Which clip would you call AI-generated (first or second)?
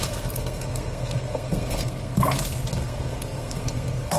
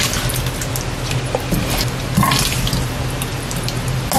first